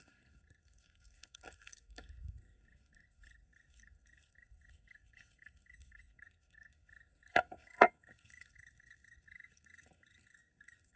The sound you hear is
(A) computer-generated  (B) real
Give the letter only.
A